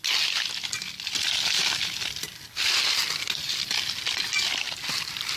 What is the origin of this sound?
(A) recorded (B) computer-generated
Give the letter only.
A